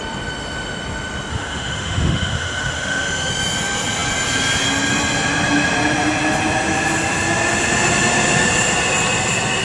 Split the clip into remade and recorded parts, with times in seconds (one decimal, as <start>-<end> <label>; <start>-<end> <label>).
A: 0.0-1.3 recorded; 1.3-3.3 remade; 3.3-9.6 recorded